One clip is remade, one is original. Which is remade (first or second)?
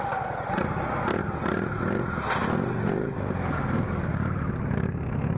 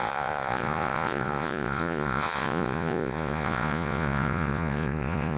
second